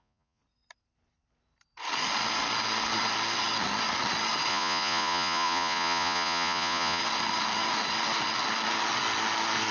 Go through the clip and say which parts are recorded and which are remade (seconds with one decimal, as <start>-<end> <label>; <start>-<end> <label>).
0.0-0.4 remade; 0.4-4.5 recorded; 4.5-7.0 remade; 7.0-9.7 recorded